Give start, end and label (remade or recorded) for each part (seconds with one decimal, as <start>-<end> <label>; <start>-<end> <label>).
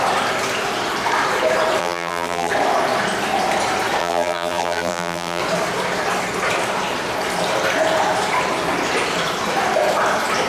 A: 0.0-1.8 recorded; 1.8-2.5 remade; 2.5-4.0 recorded; 4.0-5.4 remade; 5.4-10.5 recorded